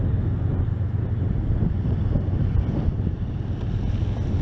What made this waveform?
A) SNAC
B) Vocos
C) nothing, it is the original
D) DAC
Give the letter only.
C